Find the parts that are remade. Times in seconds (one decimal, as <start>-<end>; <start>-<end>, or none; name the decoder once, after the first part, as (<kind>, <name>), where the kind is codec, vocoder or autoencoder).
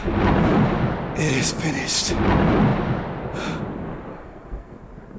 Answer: 4.1-4.8 (codec, SNAC)